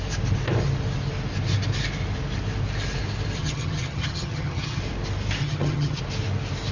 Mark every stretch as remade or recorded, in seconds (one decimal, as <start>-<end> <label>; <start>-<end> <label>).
0.0-3.4 recorded; 3.4-4.8 remade; 4.8-5.4 recorded; 5.4-6.0 remade; 6.0-6.7 recorded